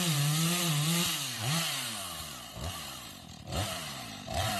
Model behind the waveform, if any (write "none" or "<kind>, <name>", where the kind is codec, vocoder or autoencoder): vocoder, BigVGAN v2